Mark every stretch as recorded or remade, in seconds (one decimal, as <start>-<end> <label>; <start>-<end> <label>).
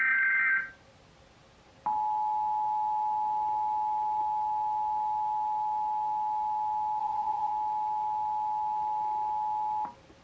0.0-7.0 recorded; 7.0-7.5 remade; 7.5-10.2 recorded